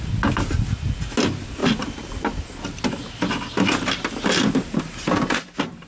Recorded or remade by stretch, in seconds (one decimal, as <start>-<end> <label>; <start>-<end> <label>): 0.0-5.9 recorded